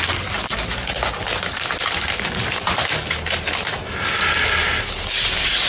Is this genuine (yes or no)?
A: yes